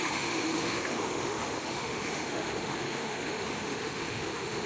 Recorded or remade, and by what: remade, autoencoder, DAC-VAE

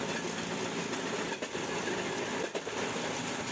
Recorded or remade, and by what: recorded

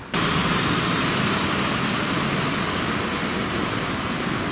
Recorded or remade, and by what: recorded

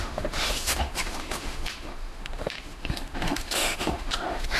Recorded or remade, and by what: remade, autoencoder, DAC-VAE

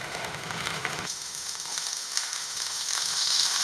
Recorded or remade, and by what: remade, autoencoder, DAC-VAE